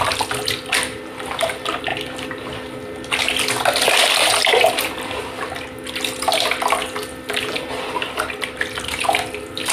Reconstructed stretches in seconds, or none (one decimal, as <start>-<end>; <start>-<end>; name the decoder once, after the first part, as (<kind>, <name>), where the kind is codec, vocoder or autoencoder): none